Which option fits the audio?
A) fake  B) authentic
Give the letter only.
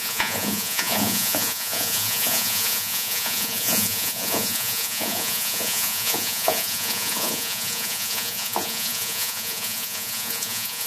A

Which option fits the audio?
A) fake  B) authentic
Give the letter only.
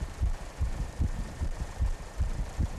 A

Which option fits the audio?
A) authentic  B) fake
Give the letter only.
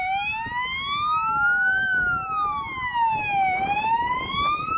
A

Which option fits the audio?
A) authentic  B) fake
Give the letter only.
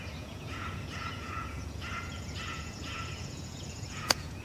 B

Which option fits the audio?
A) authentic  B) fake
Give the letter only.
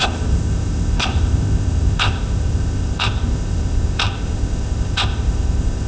B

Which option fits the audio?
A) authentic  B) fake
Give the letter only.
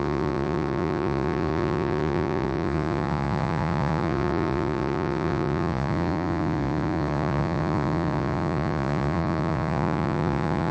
B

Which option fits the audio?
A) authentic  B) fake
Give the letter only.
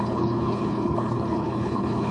B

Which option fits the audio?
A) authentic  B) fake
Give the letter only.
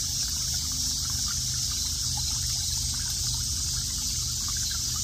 A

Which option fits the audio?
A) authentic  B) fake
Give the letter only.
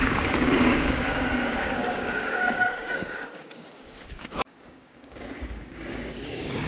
B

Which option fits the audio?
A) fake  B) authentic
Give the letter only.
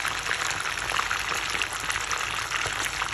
B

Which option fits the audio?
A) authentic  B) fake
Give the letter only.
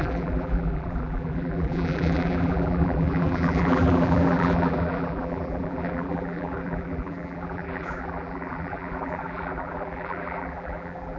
B